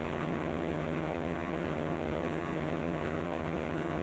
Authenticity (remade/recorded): remade